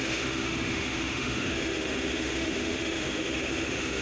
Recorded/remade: remade